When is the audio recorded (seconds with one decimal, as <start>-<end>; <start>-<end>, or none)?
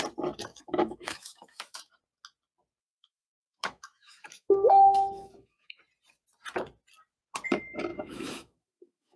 0.0-0.5; 1.9-2.8; 5.8-7.9